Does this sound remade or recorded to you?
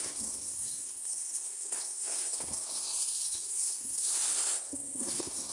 remade